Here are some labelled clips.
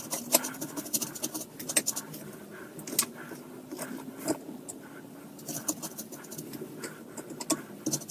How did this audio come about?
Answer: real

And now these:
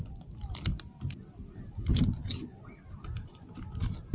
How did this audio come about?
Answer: real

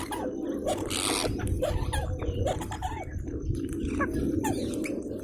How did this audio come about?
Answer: real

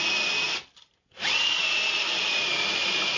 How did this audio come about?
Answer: real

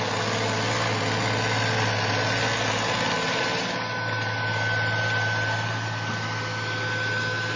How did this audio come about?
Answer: real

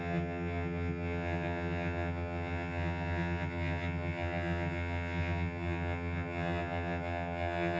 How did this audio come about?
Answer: fake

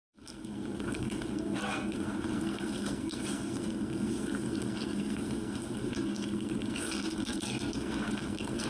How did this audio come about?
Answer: fake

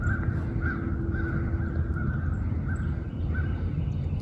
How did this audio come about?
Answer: real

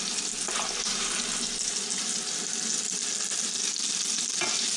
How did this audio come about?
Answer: real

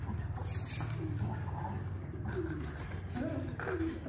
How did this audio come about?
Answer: real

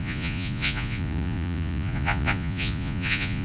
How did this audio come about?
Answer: fake